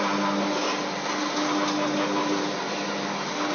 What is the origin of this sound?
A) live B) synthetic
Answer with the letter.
A